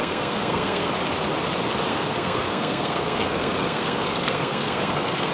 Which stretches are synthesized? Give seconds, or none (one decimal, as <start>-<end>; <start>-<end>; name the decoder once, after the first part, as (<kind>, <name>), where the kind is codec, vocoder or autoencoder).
0.0-0.9 (codec, SNAC); 1.9-5.3